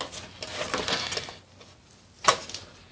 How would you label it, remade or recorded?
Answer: recorded